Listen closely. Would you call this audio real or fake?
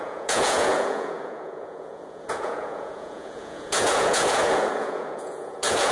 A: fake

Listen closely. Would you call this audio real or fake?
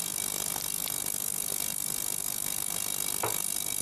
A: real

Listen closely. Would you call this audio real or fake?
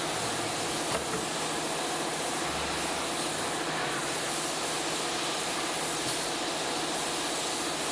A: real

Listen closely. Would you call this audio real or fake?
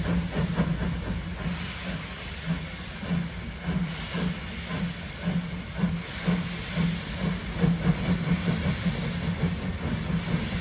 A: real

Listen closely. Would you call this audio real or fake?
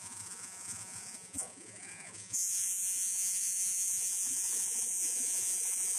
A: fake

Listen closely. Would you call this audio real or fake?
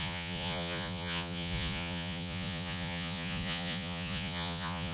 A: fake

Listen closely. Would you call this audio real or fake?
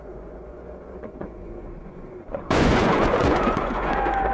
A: fake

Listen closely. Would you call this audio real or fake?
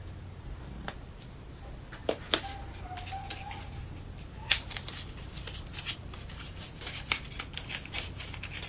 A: real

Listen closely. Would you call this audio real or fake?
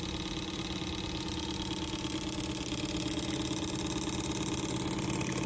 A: real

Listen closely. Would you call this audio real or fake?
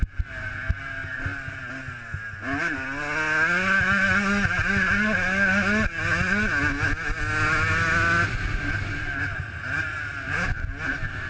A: real